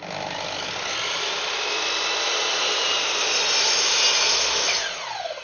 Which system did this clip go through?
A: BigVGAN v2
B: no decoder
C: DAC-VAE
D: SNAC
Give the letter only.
B